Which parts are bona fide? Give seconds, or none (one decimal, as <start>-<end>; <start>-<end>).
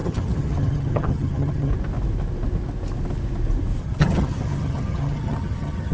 1.7-3.8